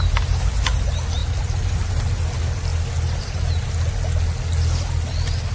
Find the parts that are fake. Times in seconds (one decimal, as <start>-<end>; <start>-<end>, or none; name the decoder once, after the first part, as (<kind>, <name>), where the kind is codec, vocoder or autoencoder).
none